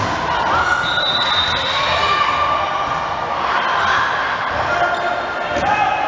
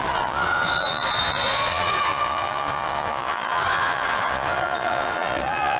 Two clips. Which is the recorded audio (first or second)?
first